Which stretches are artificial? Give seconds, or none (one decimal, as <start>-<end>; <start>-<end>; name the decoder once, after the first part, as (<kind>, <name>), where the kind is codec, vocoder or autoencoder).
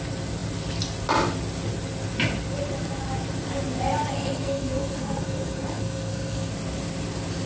4.1-6.5 (codec, SNAC)